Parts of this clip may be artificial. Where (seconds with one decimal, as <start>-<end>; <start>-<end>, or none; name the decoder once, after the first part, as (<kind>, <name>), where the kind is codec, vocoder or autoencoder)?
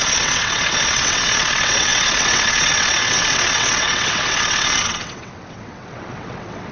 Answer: 0.0-6.7 (vocoder, WaveNeXt)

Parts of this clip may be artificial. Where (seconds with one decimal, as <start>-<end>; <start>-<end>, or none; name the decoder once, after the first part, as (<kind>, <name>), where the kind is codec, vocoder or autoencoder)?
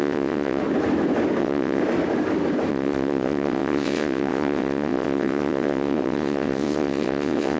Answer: 0.0-0.6 (vocoder, WaveNeXt); 1.4-1.8; 2.7-7.6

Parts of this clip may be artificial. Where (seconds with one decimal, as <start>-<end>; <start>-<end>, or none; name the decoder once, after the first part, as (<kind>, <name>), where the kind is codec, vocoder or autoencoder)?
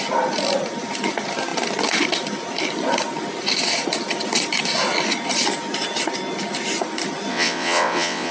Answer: 7.3-8.3 (vocoder, WaveNeXt)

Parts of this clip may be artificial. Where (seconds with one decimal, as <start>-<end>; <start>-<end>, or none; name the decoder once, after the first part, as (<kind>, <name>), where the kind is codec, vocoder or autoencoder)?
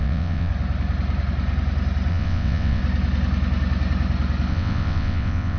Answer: 0.0-0.5 (vocoder, WaveNeXt); 2.1-2.8; 4.5-5.6